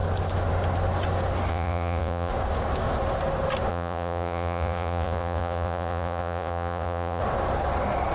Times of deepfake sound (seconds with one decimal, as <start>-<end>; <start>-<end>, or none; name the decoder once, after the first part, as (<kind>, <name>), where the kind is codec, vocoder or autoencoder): 1.5-2.3 (vocoder, Vocos); 3.7-7.2